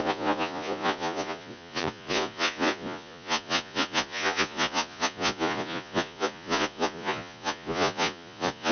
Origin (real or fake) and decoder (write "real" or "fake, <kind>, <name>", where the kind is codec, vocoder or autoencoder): fake, vocoder, Vocos